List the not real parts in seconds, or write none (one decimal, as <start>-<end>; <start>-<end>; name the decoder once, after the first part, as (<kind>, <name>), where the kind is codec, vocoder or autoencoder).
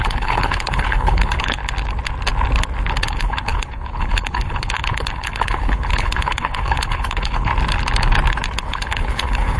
0.0-1.6 (codec, HILCodec); 3.0-7.5; 8.6-9.6